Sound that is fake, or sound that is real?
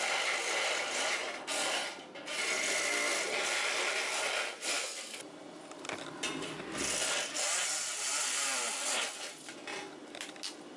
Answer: real